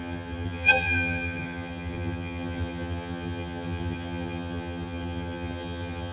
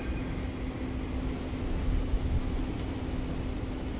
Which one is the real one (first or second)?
second